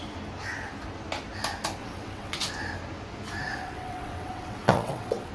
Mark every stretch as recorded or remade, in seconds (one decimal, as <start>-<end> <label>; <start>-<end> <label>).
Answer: 0.0-1.8 recorded; 1.8-2.5 remade; 2.5-3.5 recorded; 3.5-5.3 remade